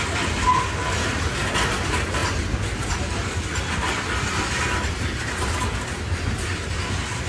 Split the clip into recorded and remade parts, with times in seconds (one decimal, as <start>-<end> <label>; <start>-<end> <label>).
0.0-7.3 recorded